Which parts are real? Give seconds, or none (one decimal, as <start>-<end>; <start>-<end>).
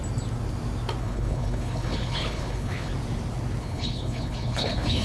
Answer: 0.0-1.0; 2.9-3.6